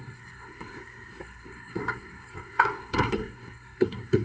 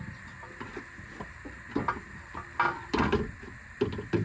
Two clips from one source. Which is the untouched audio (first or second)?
second